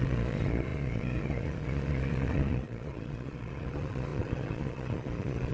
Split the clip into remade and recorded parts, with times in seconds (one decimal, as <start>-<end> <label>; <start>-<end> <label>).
0.0-5.5 remade